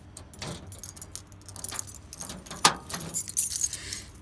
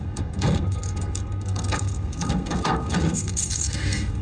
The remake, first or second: second